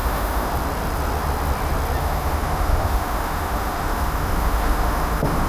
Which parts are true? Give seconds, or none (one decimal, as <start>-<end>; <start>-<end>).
0.5-2.0